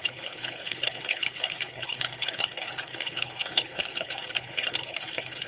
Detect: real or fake fake